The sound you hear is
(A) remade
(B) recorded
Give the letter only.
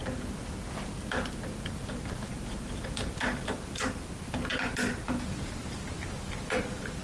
B